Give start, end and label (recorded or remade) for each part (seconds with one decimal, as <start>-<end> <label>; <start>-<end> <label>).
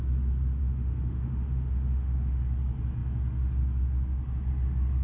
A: 0.0-0.6 recorded; 0.6-2.4 remade; 2.4-5.0 recorded